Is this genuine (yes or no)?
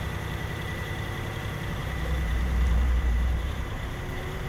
no